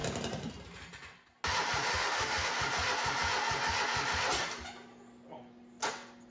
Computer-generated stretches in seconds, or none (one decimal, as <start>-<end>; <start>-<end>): 1.9-2.5